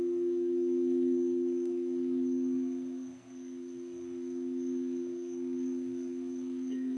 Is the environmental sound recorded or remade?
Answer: remade